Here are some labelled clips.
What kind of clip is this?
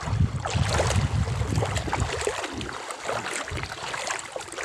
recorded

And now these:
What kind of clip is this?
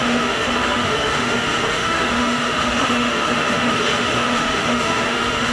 remade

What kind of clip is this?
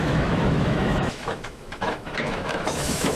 remade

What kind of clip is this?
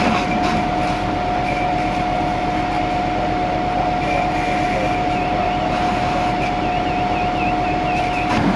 recorded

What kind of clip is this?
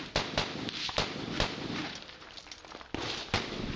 recorded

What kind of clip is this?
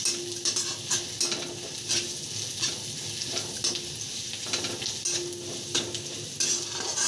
recorded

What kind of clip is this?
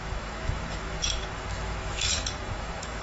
remade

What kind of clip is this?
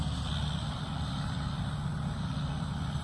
recorded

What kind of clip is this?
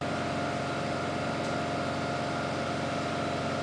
recorded